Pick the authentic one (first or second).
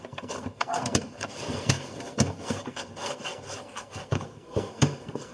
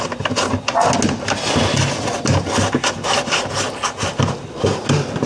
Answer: second